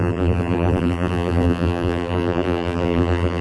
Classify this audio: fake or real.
fake